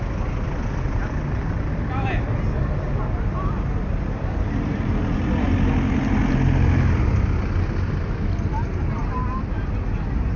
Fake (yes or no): no